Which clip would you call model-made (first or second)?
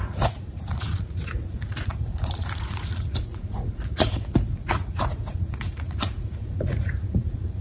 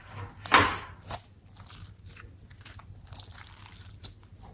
first